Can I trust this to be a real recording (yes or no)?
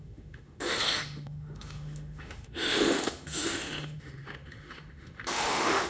no